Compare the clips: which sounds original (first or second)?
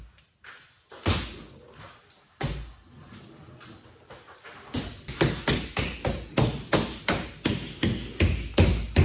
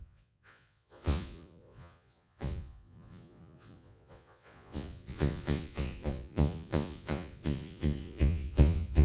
first